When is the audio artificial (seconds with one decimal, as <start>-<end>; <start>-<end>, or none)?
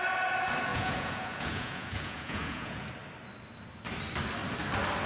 0.7-2.9